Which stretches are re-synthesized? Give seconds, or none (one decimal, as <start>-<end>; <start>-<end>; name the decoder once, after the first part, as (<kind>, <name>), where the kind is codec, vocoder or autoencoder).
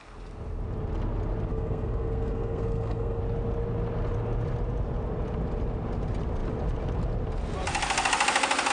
1.5-3.2 (codec, SNAC)